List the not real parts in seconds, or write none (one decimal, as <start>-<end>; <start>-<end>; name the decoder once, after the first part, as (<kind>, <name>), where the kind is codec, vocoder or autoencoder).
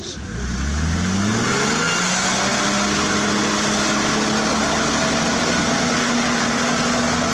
none